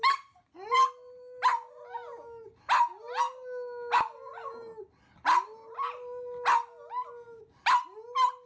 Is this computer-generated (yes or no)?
no